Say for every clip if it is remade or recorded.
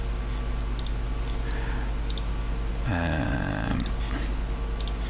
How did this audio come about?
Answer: recorded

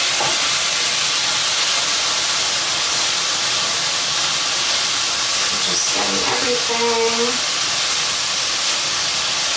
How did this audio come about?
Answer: recorded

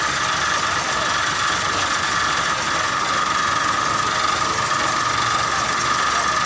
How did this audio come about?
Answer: recorded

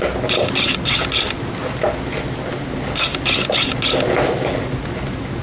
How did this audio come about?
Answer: recorded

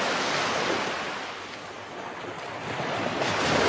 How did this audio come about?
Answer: remade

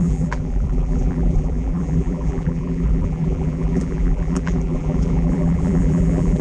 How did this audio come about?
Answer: remade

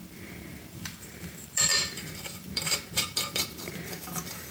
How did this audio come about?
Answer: remade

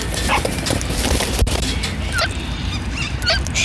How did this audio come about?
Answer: remade